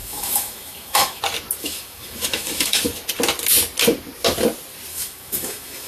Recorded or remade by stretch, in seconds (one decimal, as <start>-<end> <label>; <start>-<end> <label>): 0.0-1.2 remade; 1.2-1.6 recorded; 1.6-2.8 remade; 2.8-4.9 recorded; 4.9-5.9 remade